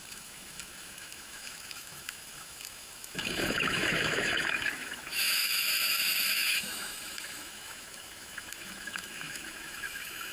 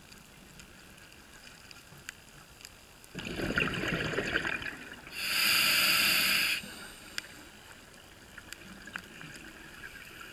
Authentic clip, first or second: second